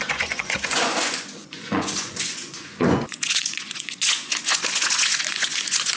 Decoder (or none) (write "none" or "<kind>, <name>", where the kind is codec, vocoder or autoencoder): vocoder, Vocos